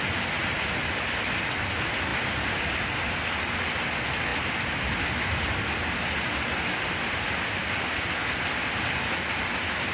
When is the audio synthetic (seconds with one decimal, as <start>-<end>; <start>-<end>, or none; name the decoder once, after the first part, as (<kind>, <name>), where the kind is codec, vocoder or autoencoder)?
none